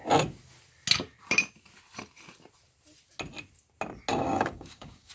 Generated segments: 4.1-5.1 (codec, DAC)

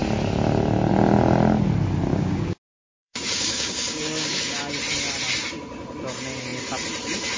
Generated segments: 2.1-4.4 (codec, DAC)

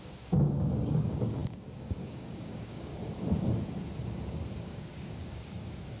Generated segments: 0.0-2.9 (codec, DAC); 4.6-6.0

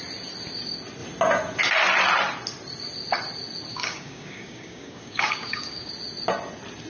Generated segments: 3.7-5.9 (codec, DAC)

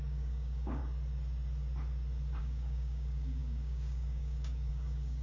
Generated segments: 0.0-0.8 (codec, DAC); 2.4-5.2

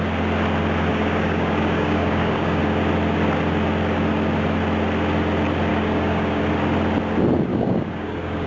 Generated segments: 0.9-2.6 (codec, DAC); 5.7-6.4; 7.5-8.5

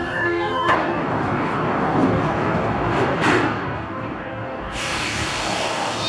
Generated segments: 0.0-6.1 (codec, DAC)

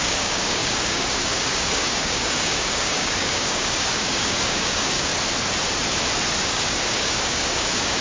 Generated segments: 0.0-5.1 (codec, DAC); 6.4-8.0